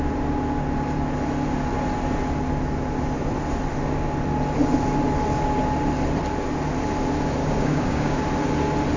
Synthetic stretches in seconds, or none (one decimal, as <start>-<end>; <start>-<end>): 7.4-8.2